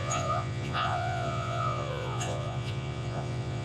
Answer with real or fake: fake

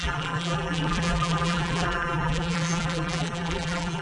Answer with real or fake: fake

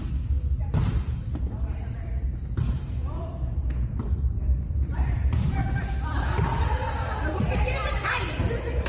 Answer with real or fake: fake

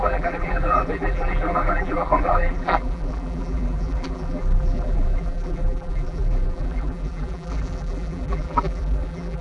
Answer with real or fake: fake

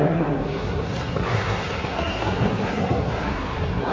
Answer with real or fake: fake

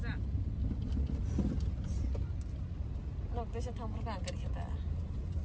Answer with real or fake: real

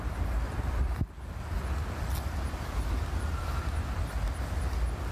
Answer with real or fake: real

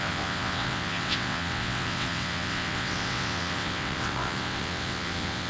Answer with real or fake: fake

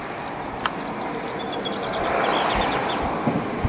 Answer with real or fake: real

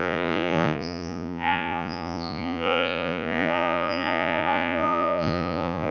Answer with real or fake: fake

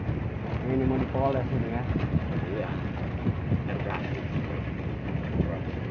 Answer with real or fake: real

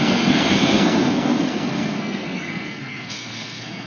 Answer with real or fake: fake